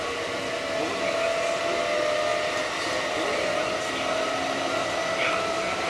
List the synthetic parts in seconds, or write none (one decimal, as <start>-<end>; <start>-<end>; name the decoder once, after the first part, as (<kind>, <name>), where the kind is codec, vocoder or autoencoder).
2.3-5.9 (vocoder, BigVGAN v2)

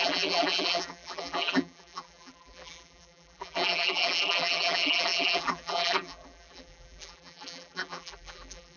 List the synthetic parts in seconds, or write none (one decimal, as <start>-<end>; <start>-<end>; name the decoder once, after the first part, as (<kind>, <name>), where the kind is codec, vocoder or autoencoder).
0.0-8.8 (vocoder, BigVGAN v2)